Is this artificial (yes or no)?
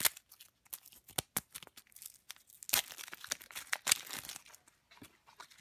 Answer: no